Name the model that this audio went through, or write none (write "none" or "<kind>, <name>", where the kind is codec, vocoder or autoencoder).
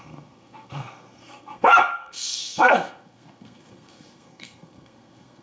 codec, SNAC